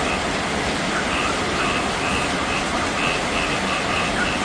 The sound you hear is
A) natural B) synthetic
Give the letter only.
A